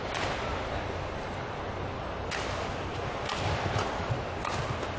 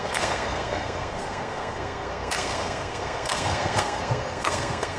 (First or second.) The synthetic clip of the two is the second